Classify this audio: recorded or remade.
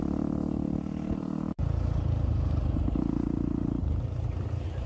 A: recorded